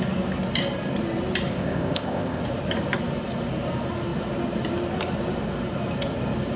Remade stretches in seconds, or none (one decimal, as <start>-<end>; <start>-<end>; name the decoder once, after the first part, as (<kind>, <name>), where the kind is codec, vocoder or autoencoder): 1.5-2.4 (codec, ZipCodec)